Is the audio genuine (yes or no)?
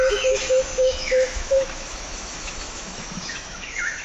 no